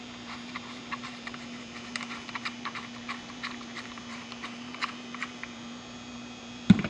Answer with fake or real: fake